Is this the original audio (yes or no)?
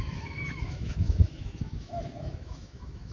no